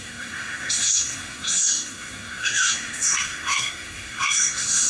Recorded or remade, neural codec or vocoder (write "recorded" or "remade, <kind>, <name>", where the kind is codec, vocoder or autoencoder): remade, codec, SNAC